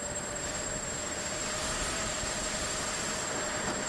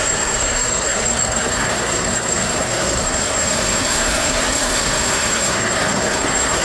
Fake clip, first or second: second